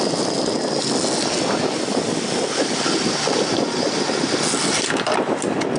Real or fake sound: real